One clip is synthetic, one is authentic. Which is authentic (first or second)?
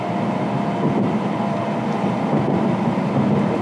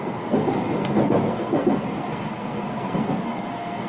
first